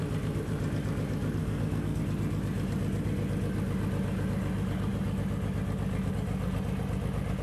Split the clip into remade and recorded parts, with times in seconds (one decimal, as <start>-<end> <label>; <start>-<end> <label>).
0.0-1.4 recorded; 1.4-2.0 remade; 2.0-7.4 recorded